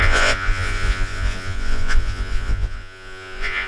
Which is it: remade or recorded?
remade